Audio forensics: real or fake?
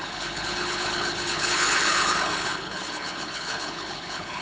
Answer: fake